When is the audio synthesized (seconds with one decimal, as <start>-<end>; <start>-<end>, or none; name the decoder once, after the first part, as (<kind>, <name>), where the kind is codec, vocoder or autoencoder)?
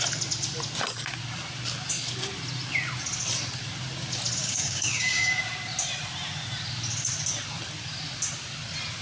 4.4-5.4 (codec, DAC)